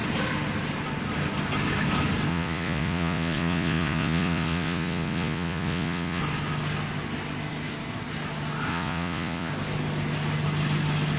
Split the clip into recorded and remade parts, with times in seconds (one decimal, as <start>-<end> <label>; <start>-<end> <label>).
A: 0.0-2.3 recorded; 2.3-6.2 remade; 6.2-8.7 recorded; 8.7-9.5 remade; 9.5-11.2 recorded